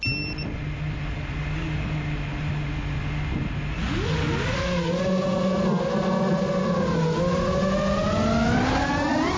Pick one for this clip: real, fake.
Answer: real